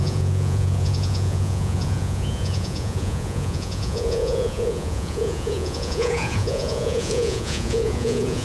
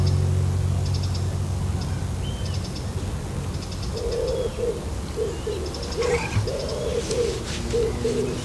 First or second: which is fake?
first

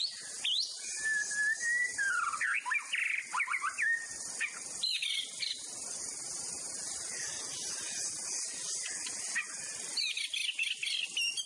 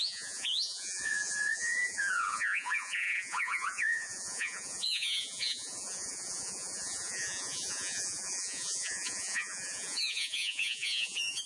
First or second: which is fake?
second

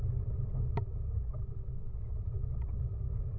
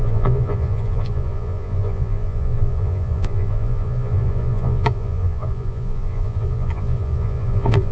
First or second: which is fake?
second